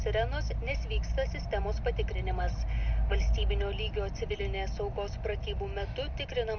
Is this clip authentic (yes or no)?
yes